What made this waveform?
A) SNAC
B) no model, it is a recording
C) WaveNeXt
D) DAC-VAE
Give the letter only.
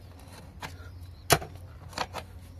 B